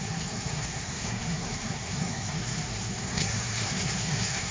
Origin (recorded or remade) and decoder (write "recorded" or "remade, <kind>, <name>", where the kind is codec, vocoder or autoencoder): remade, codec, SNAC